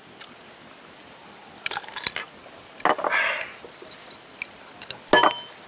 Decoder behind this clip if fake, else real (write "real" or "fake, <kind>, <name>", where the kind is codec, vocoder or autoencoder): real